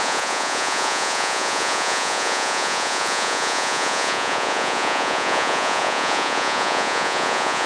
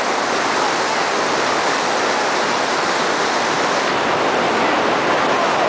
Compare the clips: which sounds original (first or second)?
second